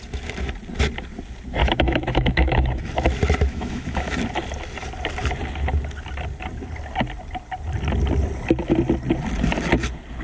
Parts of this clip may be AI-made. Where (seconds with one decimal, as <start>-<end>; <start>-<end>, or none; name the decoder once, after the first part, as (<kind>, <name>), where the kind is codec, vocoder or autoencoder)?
1.6-2.8 (autoencoder, DAC-VAE); 3.5-4.2